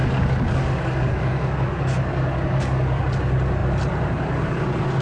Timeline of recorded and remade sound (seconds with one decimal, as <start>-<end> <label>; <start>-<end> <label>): 0.0-3.0 remade; 3.0-5.0 recorded